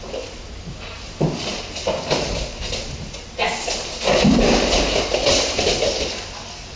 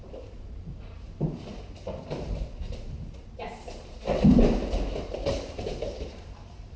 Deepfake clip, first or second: second